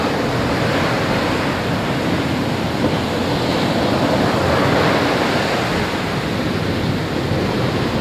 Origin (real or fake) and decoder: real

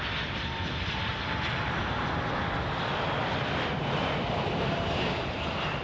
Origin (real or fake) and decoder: real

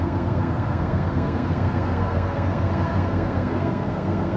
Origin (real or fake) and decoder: fake, codec, SNAC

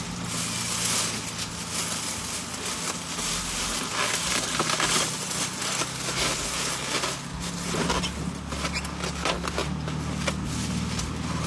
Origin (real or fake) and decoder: real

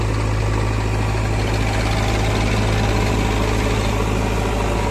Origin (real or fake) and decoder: real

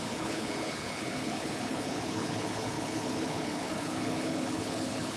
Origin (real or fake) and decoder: fake, codec, HILCodec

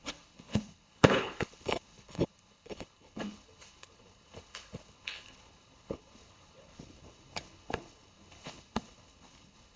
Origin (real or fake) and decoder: fake, codec, HILCodec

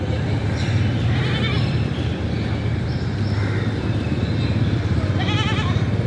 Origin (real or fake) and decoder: fake, vocoder, BigVGAN v2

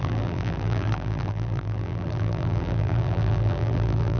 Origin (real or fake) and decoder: fake, vocoder, BigVGAN v2